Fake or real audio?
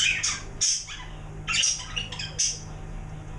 real